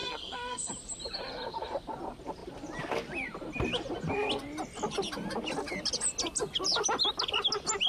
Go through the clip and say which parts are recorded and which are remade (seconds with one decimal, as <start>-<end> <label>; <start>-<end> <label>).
0.0-0.7 remade; 0.7-7.9 recorded